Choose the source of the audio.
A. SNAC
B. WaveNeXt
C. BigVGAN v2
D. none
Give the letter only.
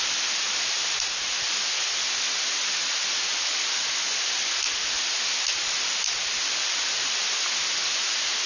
D